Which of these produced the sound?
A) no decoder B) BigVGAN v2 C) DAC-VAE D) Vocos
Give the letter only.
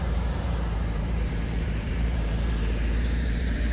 B